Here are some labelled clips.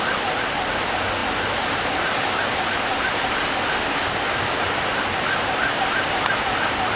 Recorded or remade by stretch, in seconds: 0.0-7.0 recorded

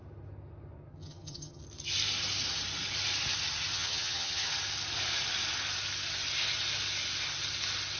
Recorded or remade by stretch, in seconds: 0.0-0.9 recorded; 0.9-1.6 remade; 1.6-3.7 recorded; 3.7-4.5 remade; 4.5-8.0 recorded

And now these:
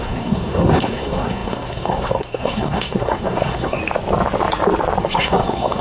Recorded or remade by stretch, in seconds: 0.0-3.8 remade; 3.8-5.0 recorded; 5.0-5.8 remade

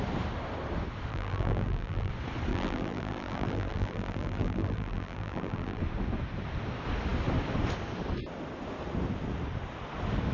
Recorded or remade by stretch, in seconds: 0.0-1.1 recorded; 1.1-2.1 remade; 2.1-2.5 recorded; 2.5-5.8 remade; 5.8-10.3 recorded